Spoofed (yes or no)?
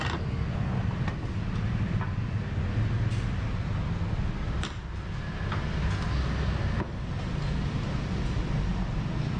no